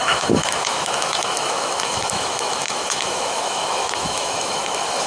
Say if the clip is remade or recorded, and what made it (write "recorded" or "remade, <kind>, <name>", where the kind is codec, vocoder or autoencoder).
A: remade, autoencoder, DAC-VAE